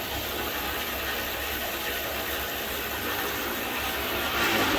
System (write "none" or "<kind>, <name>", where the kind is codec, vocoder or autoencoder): vocoder, BigVGAN v2